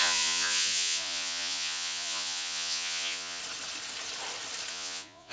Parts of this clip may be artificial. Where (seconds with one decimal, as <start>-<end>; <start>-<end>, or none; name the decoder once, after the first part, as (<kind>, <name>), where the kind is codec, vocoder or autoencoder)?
0.0-3.4 (vocoder, Vocos); 4.7-5.3